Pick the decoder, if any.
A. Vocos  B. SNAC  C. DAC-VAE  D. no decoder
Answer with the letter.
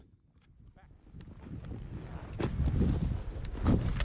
D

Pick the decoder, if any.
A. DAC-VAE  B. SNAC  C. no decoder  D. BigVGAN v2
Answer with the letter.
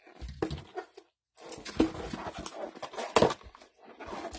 C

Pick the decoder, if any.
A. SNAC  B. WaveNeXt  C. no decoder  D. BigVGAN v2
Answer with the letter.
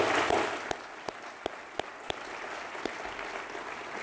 C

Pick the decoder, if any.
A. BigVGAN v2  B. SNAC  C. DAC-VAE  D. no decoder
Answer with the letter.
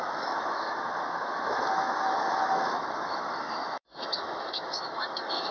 C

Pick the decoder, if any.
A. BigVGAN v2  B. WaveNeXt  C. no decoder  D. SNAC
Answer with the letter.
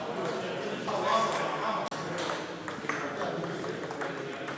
C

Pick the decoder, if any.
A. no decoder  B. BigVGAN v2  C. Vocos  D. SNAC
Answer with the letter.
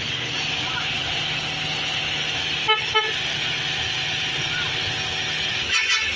A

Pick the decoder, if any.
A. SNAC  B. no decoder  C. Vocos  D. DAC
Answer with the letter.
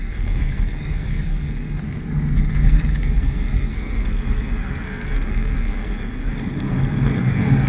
A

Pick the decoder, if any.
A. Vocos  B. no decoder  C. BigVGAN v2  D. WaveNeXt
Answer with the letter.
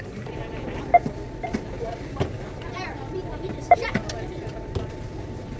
C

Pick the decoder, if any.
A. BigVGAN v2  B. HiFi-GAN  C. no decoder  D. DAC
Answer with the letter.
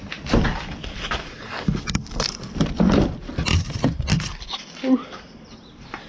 A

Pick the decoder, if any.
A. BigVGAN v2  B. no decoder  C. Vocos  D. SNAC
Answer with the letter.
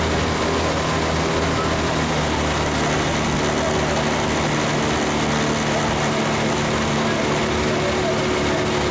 B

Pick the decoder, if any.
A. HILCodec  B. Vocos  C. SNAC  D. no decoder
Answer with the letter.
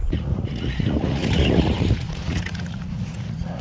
B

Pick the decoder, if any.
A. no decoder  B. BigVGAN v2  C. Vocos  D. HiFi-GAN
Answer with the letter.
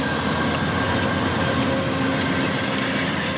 A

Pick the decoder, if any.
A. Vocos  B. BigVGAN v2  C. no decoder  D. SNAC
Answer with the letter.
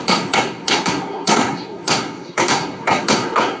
D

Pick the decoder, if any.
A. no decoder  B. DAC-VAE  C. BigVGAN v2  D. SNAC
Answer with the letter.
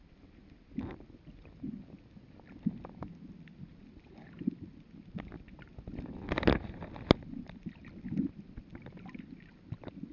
A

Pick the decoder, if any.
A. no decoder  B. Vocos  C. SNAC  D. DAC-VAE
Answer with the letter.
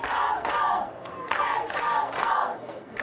C